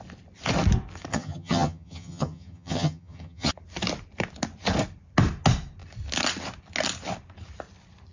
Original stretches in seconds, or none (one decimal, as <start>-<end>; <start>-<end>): 0.0-1.1; 3.5-8.1

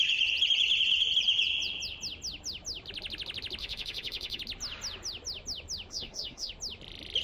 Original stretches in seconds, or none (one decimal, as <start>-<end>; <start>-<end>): 0.0-3.6; 4.4-5.9; 6.5-7.2

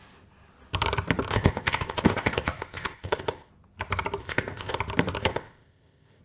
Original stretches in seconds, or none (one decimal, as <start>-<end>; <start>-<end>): 0.0-1.3; 3.5-4.2; 4.8-5.2

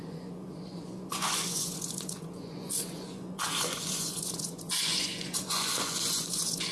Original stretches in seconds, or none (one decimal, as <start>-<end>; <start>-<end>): none

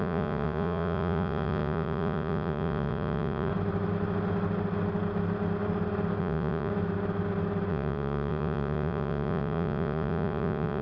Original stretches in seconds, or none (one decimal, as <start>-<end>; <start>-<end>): 3.5-6.2; 6.7-7.7

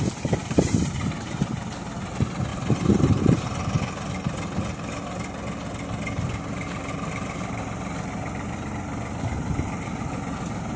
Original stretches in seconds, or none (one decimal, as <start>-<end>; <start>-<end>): 0.0-10.8

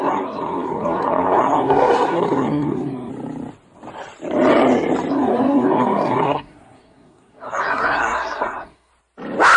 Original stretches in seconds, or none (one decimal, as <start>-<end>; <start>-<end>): 3.1-5.1; 8.9-9.6